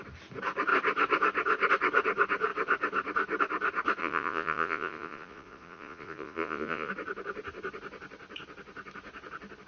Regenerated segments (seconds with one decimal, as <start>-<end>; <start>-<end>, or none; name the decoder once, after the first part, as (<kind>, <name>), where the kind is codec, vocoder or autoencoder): 4.0-6.9 (vocoder, Vocos)